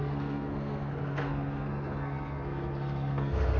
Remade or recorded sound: remade